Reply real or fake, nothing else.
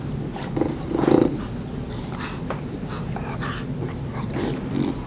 real